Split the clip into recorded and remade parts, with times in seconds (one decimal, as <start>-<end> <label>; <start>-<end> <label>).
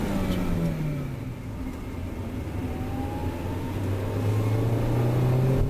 0.0-5.7 recorded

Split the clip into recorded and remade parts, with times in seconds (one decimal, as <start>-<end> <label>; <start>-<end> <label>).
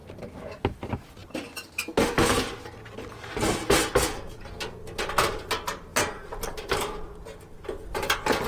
0.0-5.9 recorded; 5.9-7.4 remade; 7.4-8.5 recorded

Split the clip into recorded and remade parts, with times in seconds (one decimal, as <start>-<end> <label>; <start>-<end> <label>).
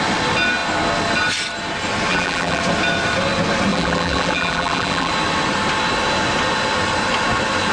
0.0-2.1 recorded; 2.1-2.6 remade; 2.6-3.7 recorded; 3.7-5.1 remade; 5.1-7.7 recorded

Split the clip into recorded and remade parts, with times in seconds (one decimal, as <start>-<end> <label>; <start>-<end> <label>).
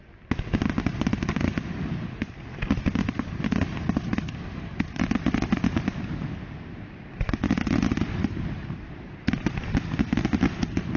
0.0-4.1 recorded; 4.1-7.9 remade; 7.9-8.6 recorded; 8.6-9.2 remade; 9.2-11.0 recorded